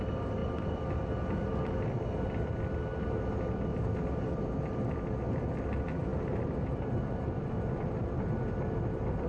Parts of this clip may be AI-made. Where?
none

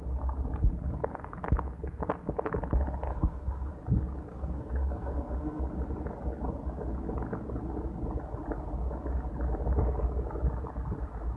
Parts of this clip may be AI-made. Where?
3.1-3.7; 4.3-5.6

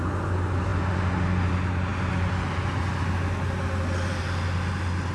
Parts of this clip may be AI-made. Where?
none